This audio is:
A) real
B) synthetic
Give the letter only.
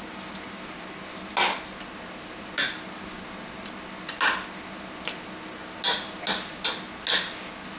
A